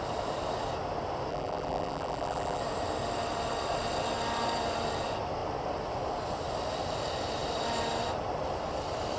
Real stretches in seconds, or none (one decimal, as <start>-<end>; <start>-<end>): 0.0-1.3; 2.6-9.2